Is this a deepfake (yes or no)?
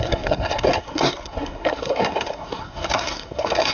yes